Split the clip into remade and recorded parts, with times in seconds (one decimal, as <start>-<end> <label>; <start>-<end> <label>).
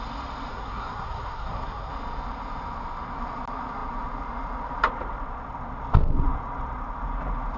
0.0-0.5 recorded; 0.5-1.9 remade; 1.9-7.6 recorded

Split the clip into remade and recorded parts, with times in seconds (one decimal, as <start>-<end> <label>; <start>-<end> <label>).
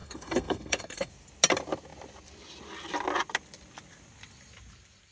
0.0-1.1 remade; 1.1-5.1 recorded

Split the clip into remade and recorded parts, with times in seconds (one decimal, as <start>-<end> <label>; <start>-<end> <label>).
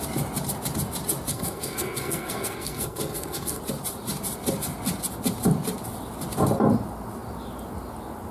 0.0-1.3 recorded; 1.3-3.6 remade; 3.6-8.3 recorded